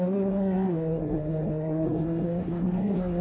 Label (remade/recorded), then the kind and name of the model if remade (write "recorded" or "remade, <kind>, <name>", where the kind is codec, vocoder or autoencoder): remade, codec, SNAC